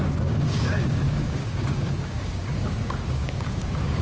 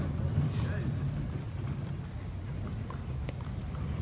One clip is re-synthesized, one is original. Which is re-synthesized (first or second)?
first